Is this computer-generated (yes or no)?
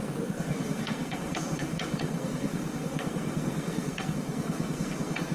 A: yes